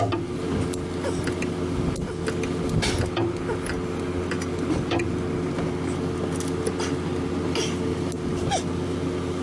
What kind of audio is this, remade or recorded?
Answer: recorded